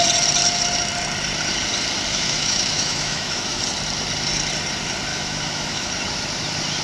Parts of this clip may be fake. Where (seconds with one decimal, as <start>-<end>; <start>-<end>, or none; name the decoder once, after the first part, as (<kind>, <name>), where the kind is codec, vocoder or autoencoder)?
2.1-3.6 (autoencoder, DAC-VAE); 5.1-5.9